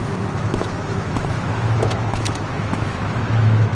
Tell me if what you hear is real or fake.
fake